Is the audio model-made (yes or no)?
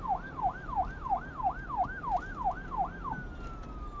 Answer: no